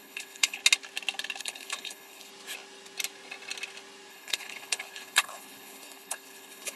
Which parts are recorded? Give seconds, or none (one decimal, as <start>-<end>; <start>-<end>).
0.6-1.4; 2.3-4.1